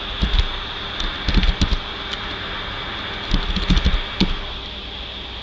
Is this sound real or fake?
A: real